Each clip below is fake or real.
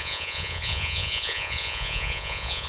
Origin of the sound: fake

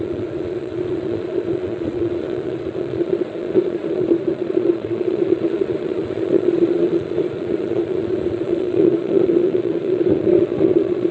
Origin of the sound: fake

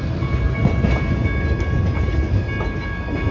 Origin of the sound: real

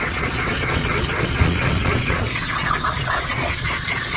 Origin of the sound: fake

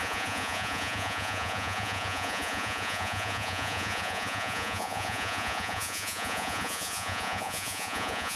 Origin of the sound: fake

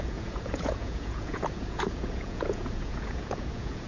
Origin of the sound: fake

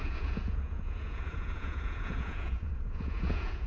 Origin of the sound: fake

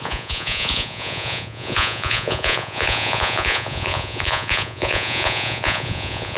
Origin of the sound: fake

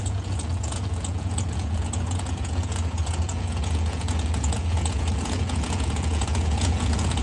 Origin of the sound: fake